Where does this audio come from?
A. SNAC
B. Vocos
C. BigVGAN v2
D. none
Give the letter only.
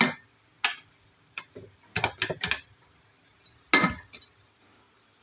D